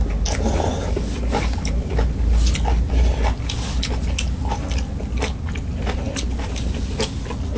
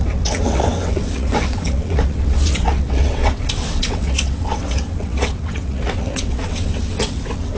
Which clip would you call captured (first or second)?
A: first